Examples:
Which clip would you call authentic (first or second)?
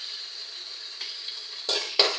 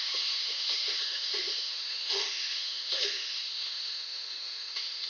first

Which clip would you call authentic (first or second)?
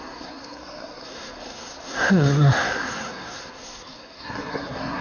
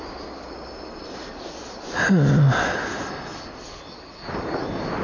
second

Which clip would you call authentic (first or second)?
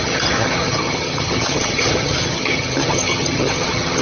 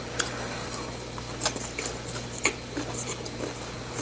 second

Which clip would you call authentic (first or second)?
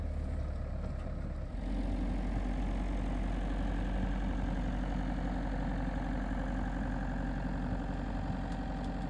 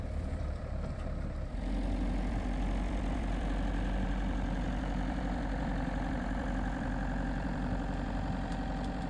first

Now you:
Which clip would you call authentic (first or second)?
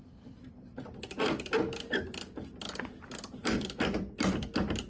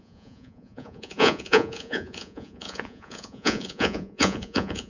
first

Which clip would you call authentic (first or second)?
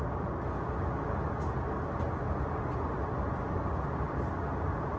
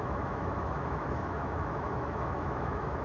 first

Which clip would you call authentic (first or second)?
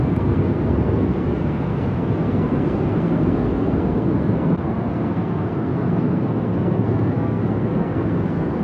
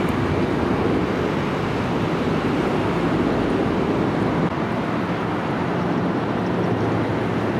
second